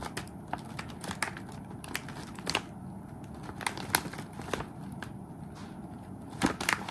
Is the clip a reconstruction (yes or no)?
no